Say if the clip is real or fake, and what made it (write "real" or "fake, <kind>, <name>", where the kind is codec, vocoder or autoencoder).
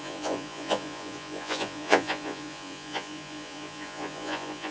fake, vocoder, Vocos